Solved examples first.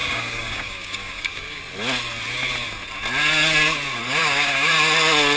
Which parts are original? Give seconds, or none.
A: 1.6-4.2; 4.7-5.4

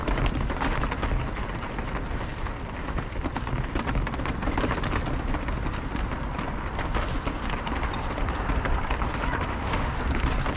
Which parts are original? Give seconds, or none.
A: 0.0-9.5; 10.0-10.6

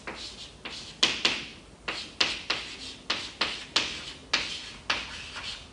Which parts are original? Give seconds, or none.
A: 0.0-5.7

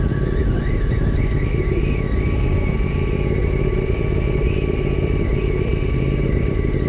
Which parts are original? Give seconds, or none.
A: 0.0-0.4; 0.9-3.4; 4.0-5.7; 6.5-6.9

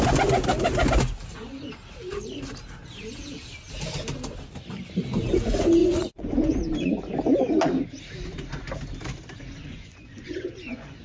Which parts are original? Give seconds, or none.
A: 0.0-5.8; 7.1-9.6